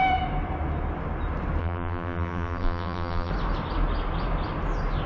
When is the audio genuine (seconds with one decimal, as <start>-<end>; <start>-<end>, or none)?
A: 0.0-1.6; 3.3-5.1